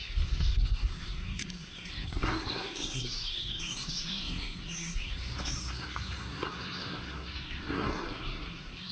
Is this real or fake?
fake